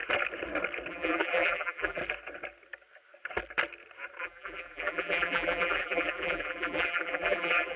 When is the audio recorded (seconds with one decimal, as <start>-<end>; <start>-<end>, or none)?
0.0-0.9; 2.0-4.2

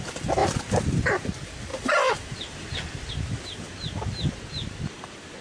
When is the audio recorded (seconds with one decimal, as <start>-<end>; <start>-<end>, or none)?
0.4-1.0

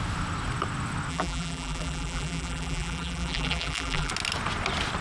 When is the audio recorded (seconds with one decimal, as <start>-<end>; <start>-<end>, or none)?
0.0-1.1; 4.1-5.0

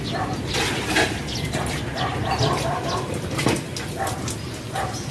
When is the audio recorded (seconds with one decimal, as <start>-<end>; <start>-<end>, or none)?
0.0-2.2; 4.1-5.1